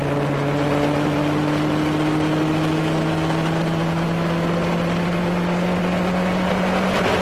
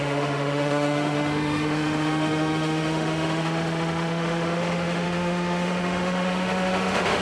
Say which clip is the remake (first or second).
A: second